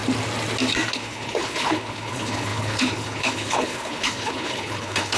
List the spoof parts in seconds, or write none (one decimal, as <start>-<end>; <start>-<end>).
0.9-5.2